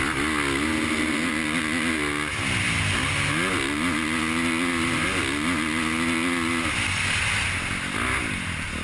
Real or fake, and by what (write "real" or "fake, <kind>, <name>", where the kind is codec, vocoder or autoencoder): real